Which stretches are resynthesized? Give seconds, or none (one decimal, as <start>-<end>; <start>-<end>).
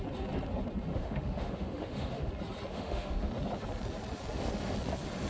0.9-2.3; 2.7-3.3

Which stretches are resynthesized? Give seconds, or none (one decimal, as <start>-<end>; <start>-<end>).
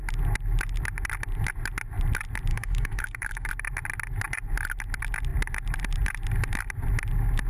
2.5-3.5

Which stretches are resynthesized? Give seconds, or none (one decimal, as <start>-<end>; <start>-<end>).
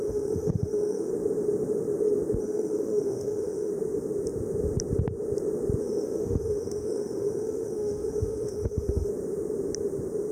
0.0-1.1; 2.4-3.7; 5.8-9.1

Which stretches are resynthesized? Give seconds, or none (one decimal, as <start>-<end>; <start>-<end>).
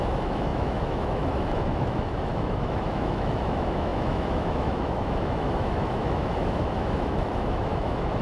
0.0-8.2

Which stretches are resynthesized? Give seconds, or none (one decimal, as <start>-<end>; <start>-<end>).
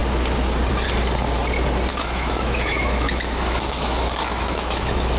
1.9-5.2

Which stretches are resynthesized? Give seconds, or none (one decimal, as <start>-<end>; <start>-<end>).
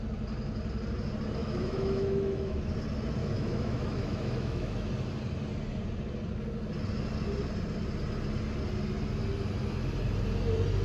1.4-2.7; 3.2-4.9